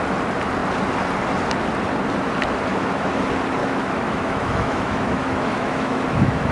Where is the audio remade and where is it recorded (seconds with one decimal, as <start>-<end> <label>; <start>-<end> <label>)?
0.0-2.7 recorded; 2.7-3.2 remade; 3.2-3.6 recorded; 3.6-6.5 remade